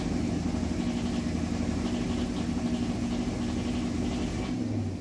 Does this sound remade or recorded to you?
recorded